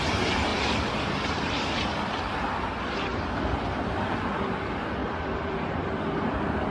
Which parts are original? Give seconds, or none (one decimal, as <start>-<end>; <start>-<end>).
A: 0.0-0.5; 1.8-3.1; 4.2-5.0; 5.7-6.7